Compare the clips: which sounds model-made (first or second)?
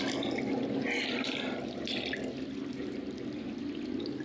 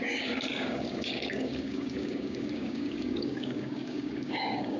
second